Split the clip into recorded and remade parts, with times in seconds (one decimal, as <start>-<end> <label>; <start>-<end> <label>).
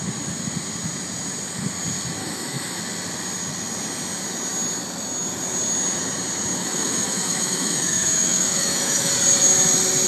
0.0-2.2 recorded; 2.2-2.8 remade; 2.8-6.6 recorded; 6.6-9.1 remade; 9.1-10.1 recorded